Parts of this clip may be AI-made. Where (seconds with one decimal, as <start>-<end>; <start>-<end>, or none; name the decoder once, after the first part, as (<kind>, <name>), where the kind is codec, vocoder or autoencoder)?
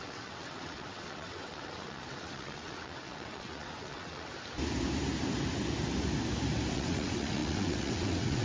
0.0-4.3 (vocoder, WaveNeXt); 6.7-8.4